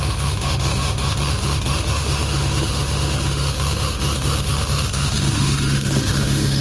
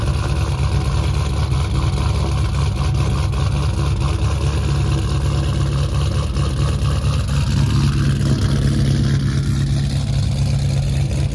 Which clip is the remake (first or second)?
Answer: first